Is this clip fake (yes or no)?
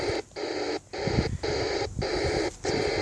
no